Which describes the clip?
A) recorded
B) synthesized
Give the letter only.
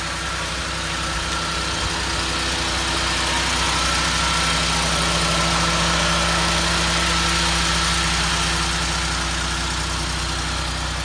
A